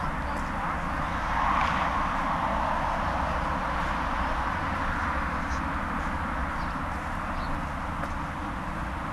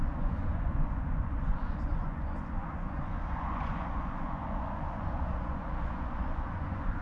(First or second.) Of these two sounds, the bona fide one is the first